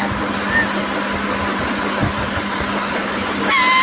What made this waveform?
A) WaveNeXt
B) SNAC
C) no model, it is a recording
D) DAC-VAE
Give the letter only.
C